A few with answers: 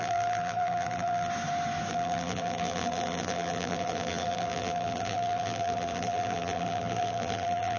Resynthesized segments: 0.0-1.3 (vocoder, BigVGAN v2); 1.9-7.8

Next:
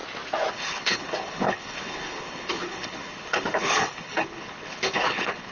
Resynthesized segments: 0.5-5.5 (codec, HILCodec)